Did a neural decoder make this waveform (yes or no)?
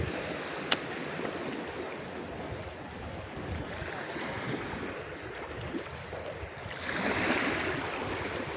no